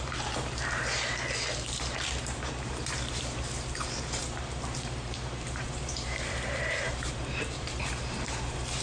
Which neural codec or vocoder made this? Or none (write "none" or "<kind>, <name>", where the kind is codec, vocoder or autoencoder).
vocoder, BigVGAN v2